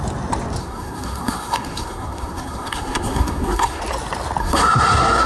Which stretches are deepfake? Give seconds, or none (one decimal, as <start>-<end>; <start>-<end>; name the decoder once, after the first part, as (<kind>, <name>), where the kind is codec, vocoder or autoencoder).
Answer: 0.6-3.8 (codec, SNAC); 4.4-5.3